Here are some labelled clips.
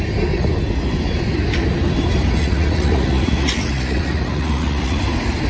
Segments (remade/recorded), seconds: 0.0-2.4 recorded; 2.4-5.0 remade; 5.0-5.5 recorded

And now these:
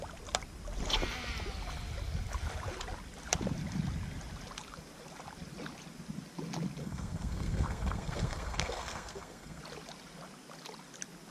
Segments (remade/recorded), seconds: 0.0-6.8 recorded; 6.8-9.6 remade; 9.6-11.3 recorded